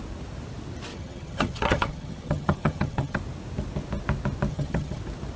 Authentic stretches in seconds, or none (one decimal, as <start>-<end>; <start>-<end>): 0.0-0.9; 3.2-4.5; 5.0-5.4